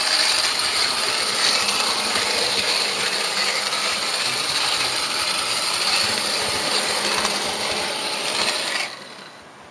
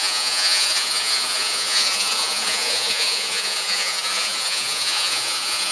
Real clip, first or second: first